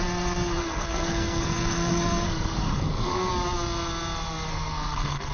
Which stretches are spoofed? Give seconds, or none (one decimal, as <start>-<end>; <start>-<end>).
0.6-3.3; 4.5-5.3